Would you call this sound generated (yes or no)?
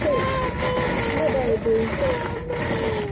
no